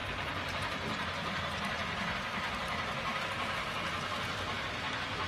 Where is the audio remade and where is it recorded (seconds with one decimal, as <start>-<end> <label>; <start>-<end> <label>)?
0.0-3.2 remade; 3.2-5.3 recorded